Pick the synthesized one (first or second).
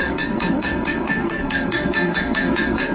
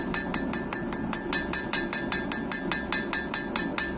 first